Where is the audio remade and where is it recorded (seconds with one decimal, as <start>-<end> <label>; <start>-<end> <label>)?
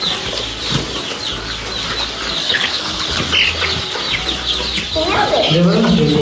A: 0.0-2.4 recorded; 2.4-3.2 remade; 3.2-6.2 recorded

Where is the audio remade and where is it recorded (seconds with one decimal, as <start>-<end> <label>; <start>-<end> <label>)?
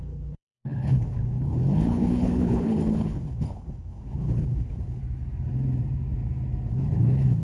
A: 0.0-5.0 remade; 5.0-6.7 recorded; 6.7-7.4 remade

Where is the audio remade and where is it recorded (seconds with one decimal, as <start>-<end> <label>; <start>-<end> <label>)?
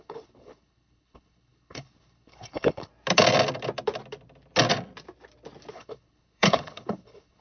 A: 0.0-2.9 remade; 2.9-5.7 recorded; 5.7-7.4 remade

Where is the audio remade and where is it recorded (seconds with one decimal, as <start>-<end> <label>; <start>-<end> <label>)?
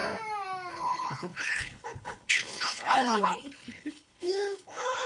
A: 0.0-0.7 recorded; 0.7-5.1 remade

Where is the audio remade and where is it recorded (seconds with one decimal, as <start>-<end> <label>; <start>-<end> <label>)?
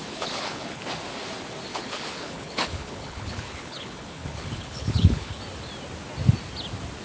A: 0.0-0.8 remade; 0.8-1.7 recorded; 1.7-5.4 remade; 5.4-7.0 recorded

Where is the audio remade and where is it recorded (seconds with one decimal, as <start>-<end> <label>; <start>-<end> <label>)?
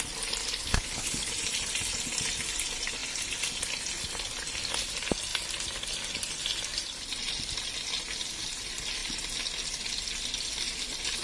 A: 0.0-0.4 recorded; 0.4-1.3 remade; 1.3-11.2 recorded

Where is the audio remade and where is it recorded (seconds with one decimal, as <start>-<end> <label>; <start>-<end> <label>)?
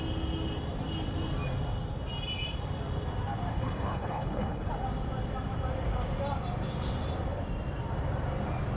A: 0.0-3.5 recorded; 3.5-4.7 remade; 4.7-8.8 recorded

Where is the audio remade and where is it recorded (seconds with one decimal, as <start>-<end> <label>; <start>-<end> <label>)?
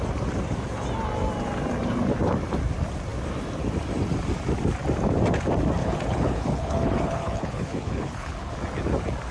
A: 0.0-5.8 recorded; 5.8-8.5 remade; 8.5-9.3 recorded